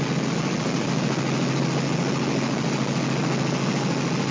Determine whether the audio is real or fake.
real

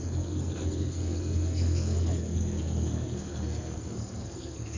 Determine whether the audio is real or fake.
fake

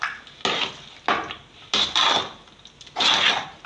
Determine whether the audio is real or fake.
real